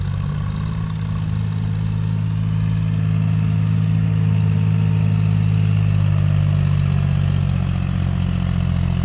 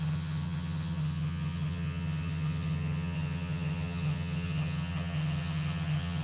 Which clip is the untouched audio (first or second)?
first